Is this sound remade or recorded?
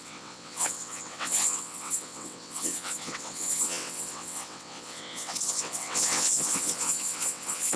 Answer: remade